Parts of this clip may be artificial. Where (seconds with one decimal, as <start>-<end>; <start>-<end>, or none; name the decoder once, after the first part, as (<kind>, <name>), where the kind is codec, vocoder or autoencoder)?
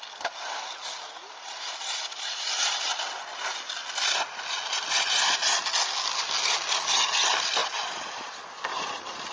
none